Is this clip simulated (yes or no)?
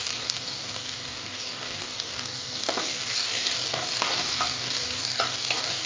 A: yes